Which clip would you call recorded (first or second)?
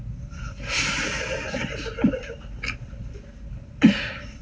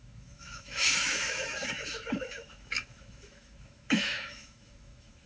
first